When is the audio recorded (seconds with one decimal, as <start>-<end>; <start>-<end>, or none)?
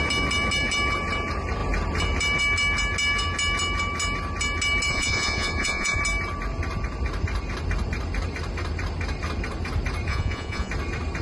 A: 0.0-4.9; 6.0-10.1; 10.7-11.2